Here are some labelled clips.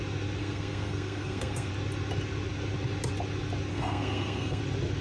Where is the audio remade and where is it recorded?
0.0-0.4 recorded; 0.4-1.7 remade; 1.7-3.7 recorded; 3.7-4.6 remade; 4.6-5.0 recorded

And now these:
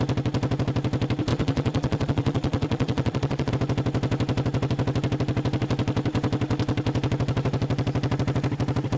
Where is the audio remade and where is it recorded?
0.0-1.3 recorded; 1.3-3.5 remade; 3.5-9.0 recorded

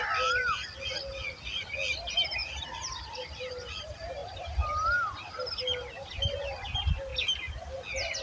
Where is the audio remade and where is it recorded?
0.0-2.4 recorded; 2.4-3.5 remade; 3.5-4.2 recorded; 4.2-5.5 remade; 5.5-8.2 recorded

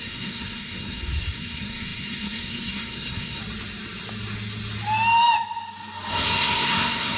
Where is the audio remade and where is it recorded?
0.0-3.4 remade; 3.4-6.1 recorded; 6.1-7.2 remade